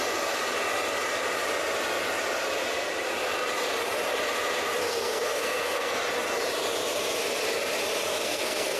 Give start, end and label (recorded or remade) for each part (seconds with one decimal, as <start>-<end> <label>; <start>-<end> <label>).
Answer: 0.0-4.8 recorded; 4.8-6.0 remade; 6.0-8.1 recorded; 8.1-8.8 remade